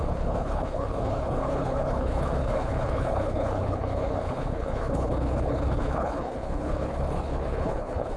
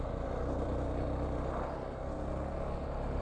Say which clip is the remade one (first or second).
first